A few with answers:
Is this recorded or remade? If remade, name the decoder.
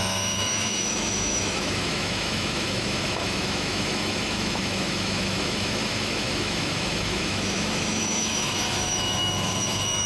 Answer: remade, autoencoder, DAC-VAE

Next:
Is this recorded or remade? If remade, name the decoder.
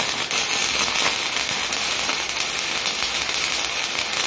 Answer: recorded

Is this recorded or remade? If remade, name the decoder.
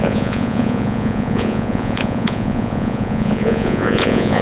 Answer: remade, vocoder, Vocos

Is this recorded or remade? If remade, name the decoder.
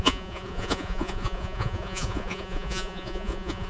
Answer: remade, vocoder, Vocos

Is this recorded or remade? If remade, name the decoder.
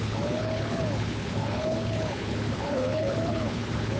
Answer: remade, codec, HILCodec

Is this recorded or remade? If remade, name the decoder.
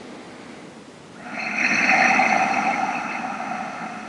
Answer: recorded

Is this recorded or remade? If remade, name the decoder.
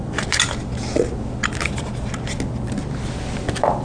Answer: recorded